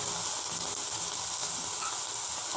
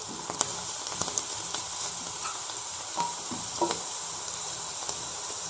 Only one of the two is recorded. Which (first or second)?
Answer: first